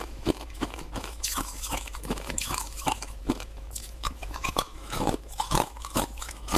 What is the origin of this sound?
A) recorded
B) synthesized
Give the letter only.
B